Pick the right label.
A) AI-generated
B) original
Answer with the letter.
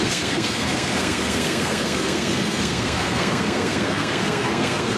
A